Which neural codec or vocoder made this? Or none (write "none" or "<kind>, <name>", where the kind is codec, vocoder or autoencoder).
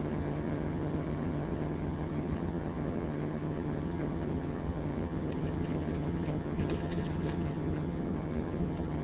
vocoder, HiFi-GAN